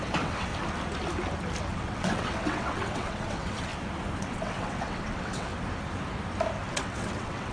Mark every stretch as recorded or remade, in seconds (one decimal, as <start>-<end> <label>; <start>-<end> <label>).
0.0-0.5 remade; 0.5-1.6 recorded; 1.6-3.7 remade; 3.7-4.2 recorded; 4.2-5.5 remade; 5.5-6.7 recorded; 6.7-7.5 remade